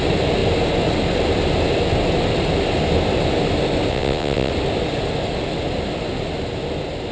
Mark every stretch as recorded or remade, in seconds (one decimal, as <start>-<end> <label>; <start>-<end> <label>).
0.0-3.9 recorded; 3.9-4.5 remade; 4.5-7.1 recorded